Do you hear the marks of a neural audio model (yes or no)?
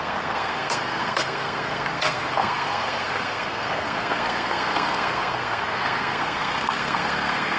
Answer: yes